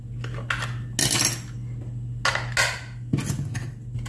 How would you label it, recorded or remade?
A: recorded